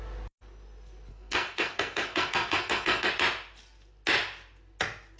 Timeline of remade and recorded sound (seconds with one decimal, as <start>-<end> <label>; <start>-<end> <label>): 0.0-1.1 recorded; 1.1-3.1 remade; 3.1-5.2 recorded